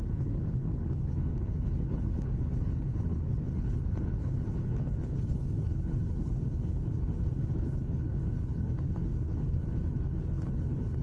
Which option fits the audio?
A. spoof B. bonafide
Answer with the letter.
A